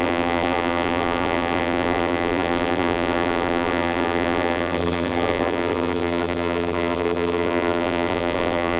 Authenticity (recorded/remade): remade